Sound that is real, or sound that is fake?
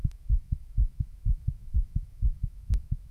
fake